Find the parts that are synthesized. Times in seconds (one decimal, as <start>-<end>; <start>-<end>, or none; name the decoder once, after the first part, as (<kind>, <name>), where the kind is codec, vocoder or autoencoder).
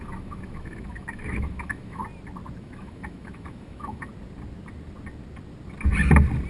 0.0-2.0 (autoencoder, DAC-VAE); 2.6-4.1